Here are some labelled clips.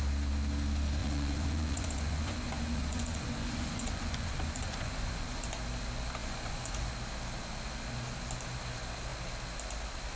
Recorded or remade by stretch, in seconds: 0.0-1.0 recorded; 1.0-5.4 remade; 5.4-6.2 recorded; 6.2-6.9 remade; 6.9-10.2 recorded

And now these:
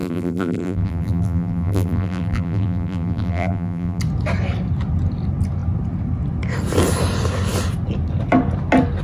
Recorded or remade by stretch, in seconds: 0.0-4.0 remade; 4.0-9.0 recorded

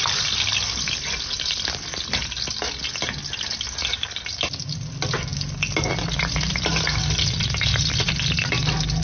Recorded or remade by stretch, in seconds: 0.0-9.0 recorded

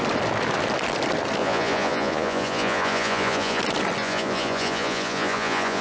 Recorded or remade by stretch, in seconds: 0.0-1.4 recorded; 1.4-3.6 remade; 3.6-4.0 recorded; 4.0-5.8 remade

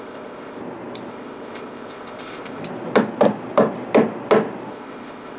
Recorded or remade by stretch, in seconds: 0.0-0.6 remade; 0.6-1.1 recorded; 1.1-2.6 remade; 2.6-4.7 recorded; 4.7-5.4 remade

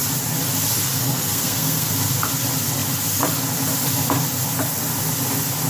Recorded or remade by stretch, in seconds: 0.0-0.9 recorded; 0.9-1.9 remade; 1.9-5.7 recorded

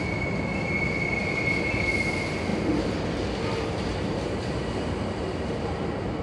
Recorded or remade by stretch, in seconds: 0.0-6.2 recorded

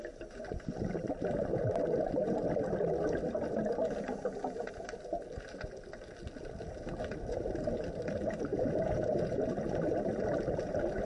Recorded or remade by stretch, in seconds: 0.0-8.5 recorded; 8.5-9.5 remade; 9.5-11.0 recorded